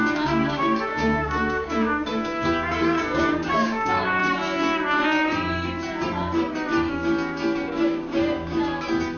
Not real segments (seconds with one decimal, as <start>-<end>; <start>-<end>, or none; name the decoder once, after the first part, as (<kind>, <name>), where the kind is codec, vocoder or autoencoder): 0.0-4.2 (codec, DAC); 6.9-9.2